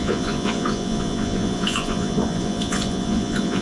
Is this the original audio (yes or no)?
no